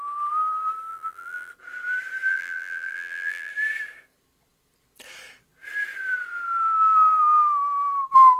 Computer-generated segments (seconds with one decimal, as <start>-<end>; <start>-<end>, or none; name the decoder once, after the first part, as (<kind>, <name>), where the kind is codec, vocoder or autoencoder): 0.9-1.5 (vocoder, BigVGAN v2); 2.3-3.5